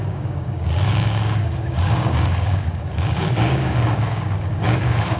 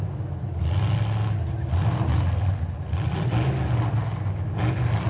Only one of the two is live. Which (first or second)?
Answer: second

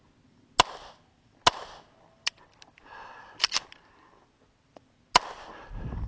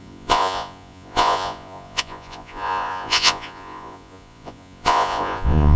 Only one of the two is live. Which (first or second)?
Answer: first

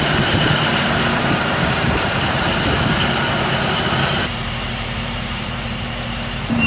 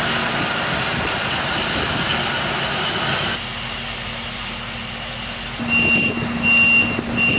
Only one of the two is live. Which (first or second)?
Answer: second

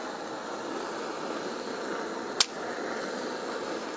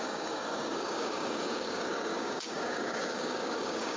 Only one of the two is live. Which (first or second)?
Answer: first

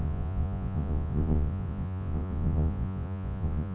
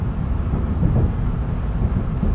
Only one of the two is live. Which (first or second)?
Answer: second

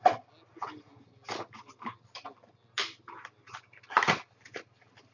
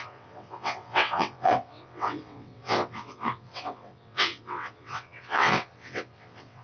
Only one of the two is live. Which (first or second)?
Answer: first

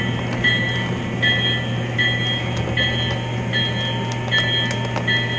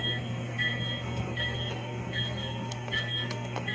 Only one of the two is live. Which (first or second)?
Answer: first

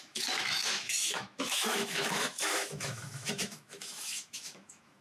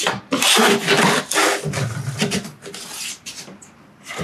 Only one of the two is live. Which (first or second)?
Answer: second